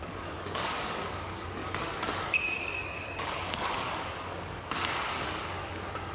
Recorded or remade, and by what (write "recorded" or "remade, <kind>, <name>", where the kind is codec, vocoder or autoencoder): remade, codec, DAC